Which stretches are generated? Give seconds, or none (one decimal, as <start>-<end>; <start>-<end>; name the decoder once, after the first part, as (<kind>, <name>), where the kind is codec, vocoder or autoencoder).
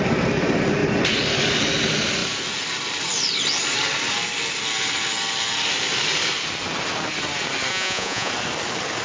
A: 7.7-8.3 (vocoder, Vocos)